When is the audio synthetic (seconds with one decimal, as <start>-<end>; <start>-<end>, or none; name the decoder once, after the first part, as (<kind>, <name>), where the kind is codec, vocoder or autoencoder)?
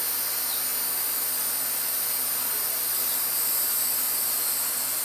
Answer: none